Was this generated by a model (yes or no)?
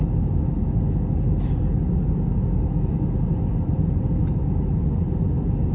no